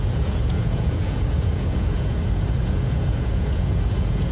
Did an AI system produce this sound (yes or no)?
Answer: yes